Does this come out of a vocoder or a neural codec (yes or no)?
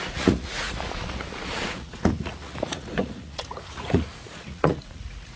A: yes